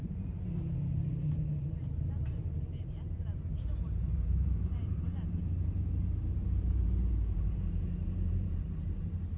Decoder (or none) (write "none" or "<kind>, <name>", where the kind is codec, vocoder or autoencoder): vocoder, BigVGAN v2